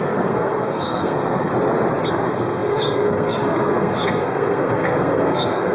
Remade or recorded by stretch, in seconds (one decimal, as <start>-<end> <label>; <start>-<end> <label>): 0.0-1.5 remade; 1.5-2.1 recorded; 2.1-5.7 remade